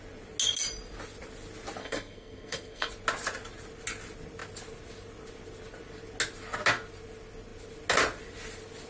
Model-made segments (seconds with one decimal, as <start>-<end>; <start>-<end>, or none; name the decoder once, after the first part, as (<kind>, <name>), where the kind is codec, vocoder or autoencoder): 1.8-2.9 (codec, SNAC)